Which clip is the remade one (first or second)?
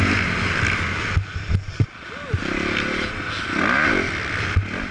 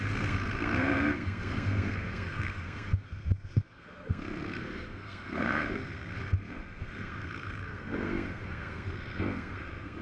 second